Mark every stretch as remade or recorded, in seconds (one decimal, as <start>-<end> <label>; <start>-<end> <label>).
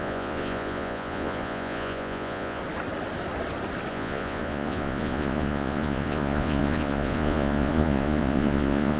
0.0-2.6 remade; 2.6-3.9 recorded; 3.9-9.0 remade